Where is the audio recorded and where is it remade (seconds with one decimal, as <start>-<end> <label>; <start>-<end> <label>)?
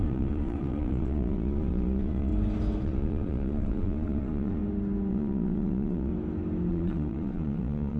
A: 0.0-2.3 remade; 2.3-2.8 recorded; 2.8-4.6 remade; 4.6-5.1 recorded; 5.1-6.1 remade; 6.1-6.7 recorded; 6.7-8.0 remade